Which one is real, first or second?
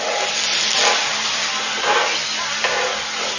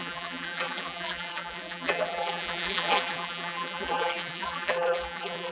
first